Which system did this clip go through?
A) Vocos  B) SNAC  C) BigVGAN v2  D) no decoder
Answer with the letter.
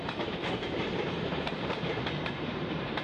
C